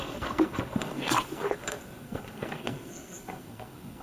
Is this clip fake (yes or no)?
yes